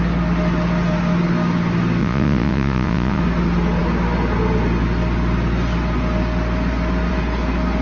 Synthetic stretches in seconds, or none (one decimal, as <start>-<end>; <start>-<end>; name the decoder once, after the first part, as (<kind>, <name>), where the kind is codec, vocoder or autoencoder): 2.0-3.2 (vocoder, Vocos)